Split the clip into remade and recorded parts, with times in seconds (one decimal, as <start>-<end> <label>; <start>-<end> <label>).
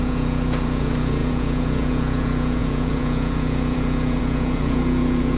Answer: 0.0-5.4 remade